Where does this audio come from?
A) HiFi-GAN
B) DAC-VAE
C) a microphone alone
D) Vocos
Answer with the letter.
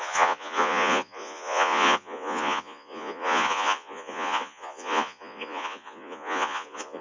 D